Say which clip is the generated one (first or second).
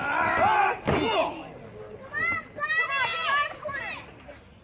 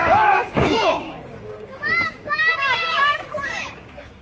second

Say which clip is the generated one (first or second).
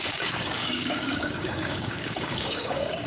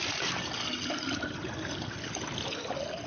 first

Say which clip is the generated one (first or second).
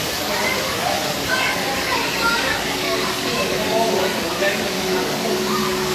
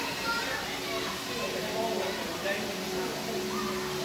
first